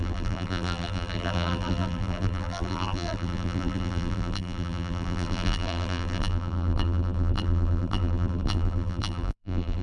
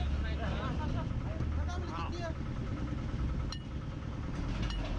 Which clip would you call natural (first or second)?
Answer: second